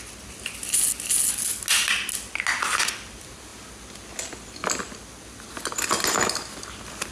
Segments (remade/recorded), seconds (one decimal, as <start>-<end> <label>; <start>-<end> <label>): 0.0-7.1 recorded